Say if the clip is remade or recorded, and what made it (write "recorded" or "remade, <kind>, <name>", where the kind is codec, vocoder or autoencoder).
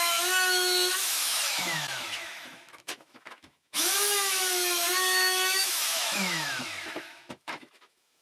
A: remade, autoencoder, DAC-VAE